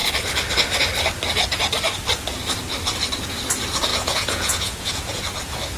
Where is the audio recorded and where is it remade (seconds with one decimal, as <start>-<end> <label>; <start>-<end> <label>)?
0.0-3.9 recorded; 3.9-5.2 remade; 5.2-5.8 recorded